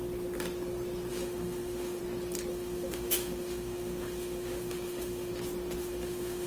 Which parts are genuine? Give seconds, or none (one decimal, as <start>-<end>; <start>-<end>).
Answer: 0.0-1.1; 2.0-2.5; 5.3-5.8